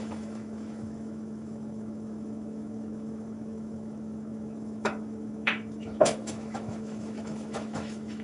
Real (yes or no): no